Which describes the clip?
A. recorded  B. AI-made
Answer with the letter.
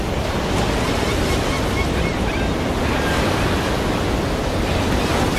A